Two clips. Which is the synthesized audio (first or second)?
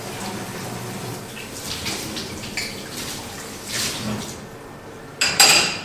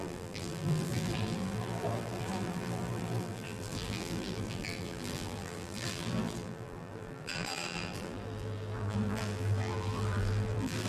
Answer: second